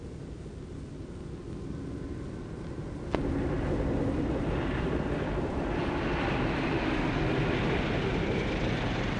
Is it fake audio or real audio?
real